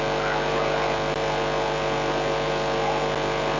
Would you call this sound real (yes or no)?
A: yes